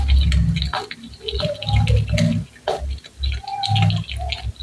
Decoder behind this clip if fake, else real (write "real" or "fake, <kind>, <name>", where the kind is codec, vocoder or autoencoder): real